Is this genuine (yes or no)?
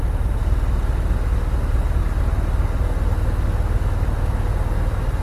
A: yes